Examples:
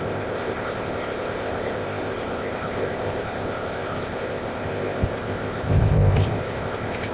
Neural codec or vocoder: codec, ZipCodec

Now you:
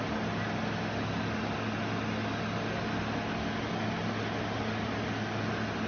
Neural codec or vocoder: none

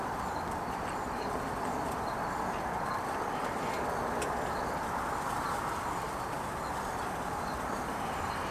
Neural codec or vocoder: vocoder, BigVGAN v2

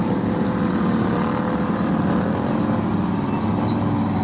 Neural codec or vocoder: none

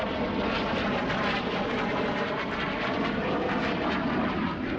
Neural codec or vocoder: none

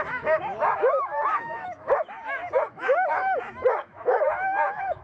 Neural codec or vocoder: autoencoder, DAC-VAE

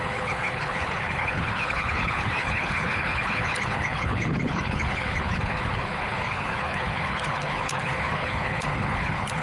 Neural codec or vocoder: codec, HILCodec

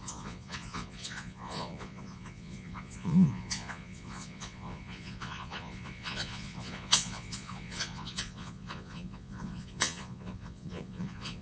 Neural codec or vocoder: vocoder, Vocos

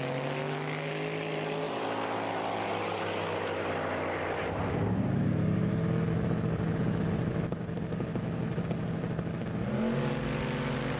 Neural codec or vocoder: none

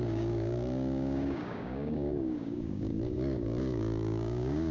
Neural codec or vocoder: codec, DAC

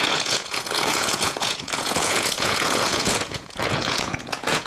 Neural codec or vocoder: vocoder, Vocos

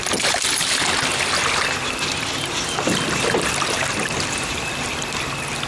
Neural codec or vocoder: none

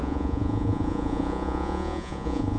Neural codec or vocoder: vocoder, Vocos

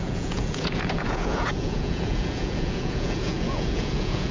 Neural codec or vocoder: vocoder, Vocos